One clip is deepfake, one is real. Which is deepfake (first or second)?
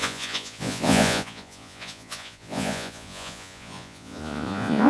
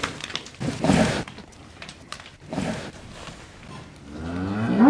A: first